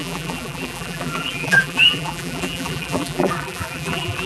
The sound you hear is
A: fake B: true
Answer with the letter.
A